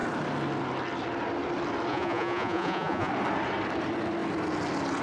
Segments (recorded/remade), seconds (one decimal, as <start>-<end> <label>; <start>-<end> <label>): 0.0-1.9 recorded; 1.9-3.1 remade; 3.1-5.0 recorded